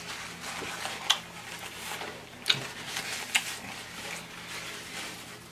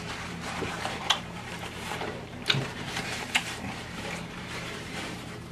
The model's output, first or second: second